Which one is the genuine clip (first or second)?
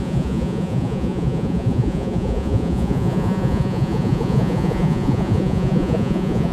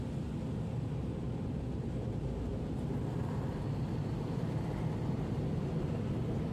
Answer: second